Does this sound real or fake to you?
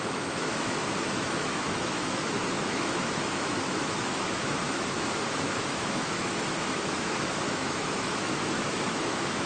fake